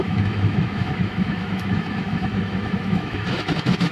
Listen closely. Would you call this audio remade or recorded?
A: remade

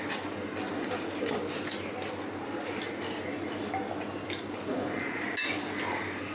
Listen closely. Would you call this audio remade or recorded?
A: recorded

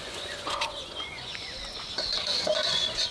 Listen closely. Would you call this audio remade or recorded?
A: remade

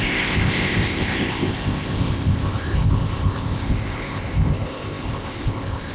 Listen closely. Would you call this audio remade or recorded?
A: remade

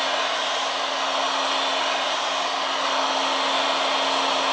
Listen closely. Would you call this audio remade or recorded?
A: recorded